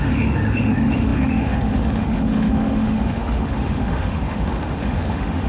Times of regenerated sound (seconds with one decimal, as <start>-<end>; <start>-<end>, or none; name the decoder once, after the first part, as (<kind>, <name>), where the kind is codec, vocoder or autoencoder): 0.0-5.5 (autoencoder, DAC-VAE)